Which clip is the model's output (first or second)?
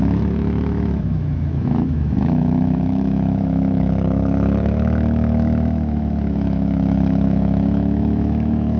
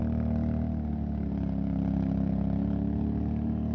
first